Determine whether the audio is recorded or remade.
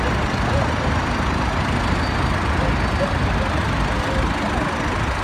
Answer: recorded